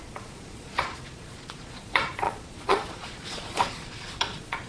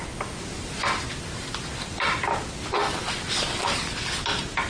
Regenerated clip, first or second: first